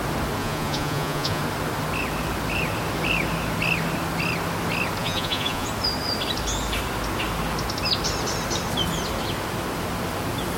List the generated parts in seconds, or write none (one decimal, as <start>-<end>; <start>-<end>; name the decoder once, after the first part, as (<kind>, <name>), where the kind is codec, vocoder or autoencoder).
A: 0.4-1.4 (vocoder, Vocos); 5.0-5.7